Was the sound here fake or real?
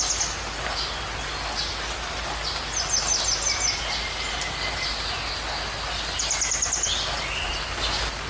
real